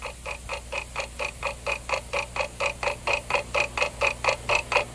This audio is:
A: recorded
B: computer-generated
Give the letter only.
A